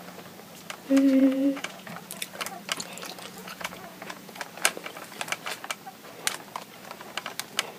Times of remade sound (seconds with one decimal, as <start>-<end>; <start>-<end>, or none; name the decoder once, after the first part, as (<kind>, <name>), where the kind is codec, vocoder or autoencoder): 1.2-1.9 (vocoder, Vocos); 3.4-4.4